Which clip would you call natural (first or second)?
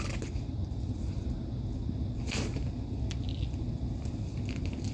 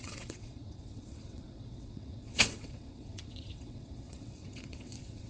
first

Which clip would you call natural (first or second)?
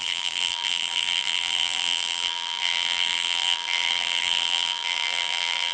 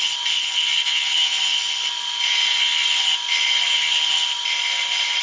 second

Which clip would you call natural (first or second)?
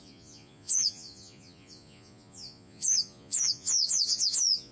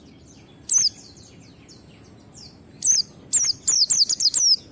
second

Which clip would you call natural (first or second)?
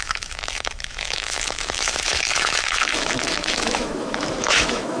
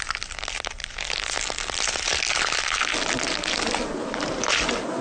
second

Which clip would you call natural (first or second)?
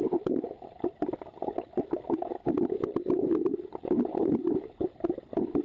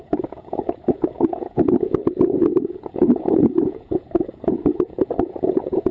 first